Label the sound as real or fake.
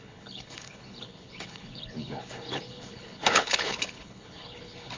fake